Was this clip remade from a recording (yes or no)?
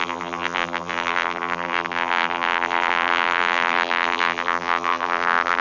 yes